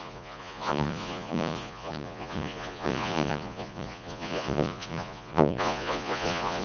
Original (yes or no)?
no